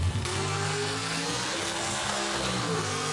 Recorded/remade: remade